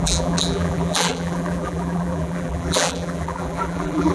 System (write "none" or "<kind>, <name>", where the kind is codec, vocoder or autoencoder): vocoder, BigVGAN v2